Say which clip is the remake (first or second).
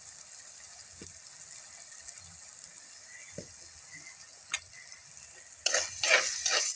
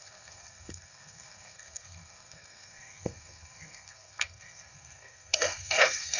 second